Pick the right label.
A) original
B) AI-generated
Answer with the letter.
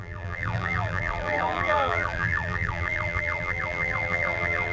B